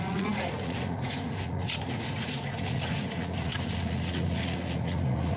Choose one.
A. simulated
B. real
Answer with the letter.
A